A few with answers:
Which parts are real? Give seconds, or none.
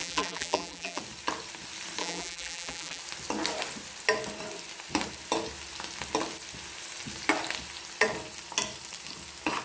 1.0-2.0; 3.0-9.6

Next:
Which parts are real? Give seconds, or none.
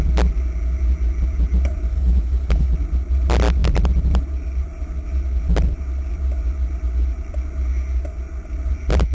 0.0-1.9; 2.7-9.1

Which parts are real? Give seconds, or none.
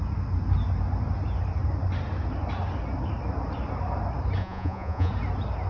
0.0-4.4; 5.1-5.7